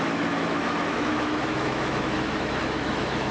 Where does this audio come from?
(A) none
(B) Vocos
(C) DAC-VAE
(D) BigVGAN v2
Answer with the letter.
C